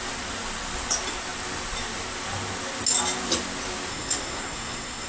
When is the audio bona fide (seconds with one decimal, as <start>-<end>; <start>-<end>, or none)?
0.0-3.9